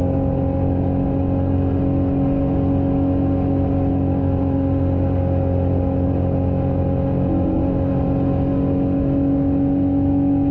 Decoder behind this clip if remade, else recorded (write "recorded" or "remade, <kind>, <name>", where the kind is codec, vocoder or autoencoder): recorded